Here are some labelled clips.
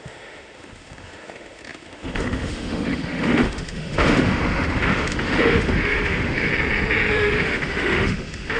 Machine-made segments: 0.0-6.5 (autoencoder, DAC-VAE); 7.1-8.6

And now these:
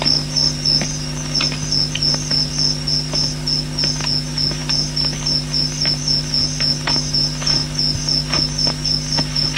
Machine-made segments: none

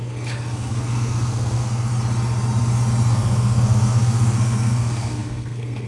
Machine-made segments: 0.0-1.9 (codec, SNAC); 3.1-5.9

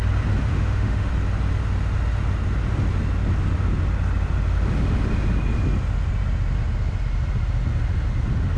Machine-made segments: 0.5-1.1 (autoencoder, DAC-VAE)

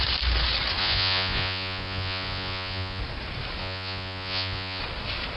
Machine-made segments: 0.8-3.0 (vocoder, Vocos); 3.6-4.8

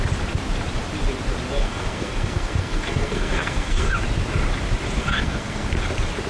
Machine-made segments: 1.6-3.9 (codec, SNAC); 5.0-5.7